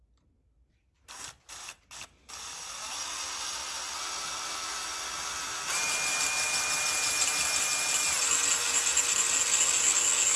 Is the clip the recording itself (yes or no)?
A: yes